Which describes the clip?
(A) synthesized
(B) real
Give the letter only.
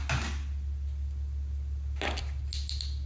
B